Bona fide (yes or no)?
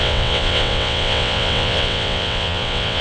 no